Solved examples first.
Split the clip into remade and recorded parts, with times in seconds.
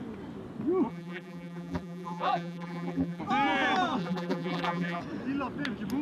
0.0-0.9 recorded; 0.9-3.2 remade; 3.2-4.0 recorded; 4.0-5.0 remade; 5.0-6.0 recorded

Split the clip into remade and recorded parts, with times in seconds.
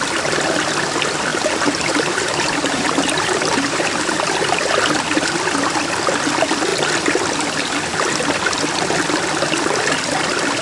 0.0-1.3 recorded; 1.3-4.7 remade; 4.7-10.6 recorded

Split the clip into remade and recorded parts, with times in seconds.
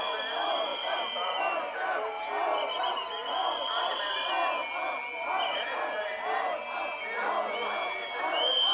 0.0-8.7 recorded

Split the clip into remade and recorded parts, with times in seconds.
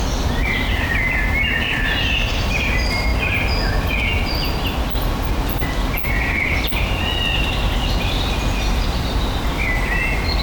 0.0-0.4 recorded; 0.4-2.7 remade; 2.7-10.4 recorded